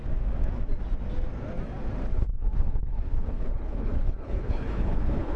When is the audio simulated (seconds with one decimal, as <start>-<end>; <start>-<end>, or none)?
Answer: 2.1-5.4